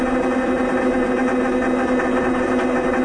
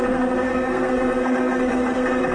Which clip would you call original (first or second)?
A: first